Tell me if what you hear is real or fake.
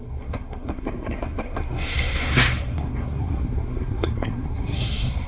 fake